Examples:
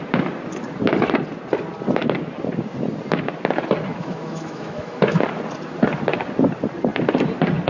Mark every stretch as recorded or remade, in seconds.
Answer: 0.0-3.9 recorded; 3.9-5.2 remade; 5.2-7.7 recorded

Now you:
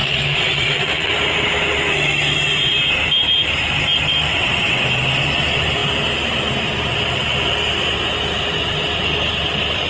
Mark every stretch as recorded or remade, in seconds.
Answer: 0.0-1.1 remade; 1.1-4.3 recorded; 4.3-4.8 remade; 4.8-9.9 recorded

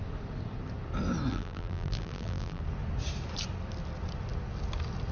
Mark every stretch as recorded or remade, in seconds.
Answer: 0.0-1.3 recorded; 1.3-2.6 remade; 2.6-5.1 recorded

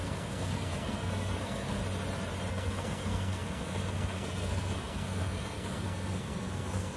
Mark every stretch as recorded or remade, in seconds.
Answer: 0.0-1.8 remade; 1.8-2.5 recorded; 2.5-7.0 remade